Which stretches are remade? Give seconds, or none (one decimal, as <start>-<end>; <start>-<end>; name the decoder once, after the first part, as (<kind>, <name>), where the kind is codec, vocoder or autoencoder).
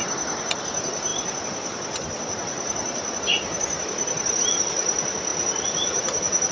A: none